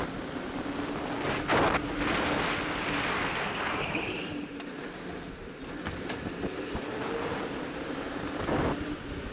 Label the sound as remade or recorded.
recorded